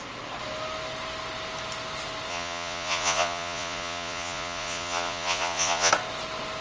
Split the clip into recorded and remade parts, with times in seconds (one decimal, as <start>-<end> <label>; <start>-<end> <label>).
0.0-2.3 recorded; 2.3-5.9 remade; 5.9-6.6 recorded